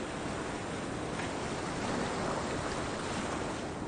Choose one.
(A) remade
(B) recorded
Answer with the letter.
B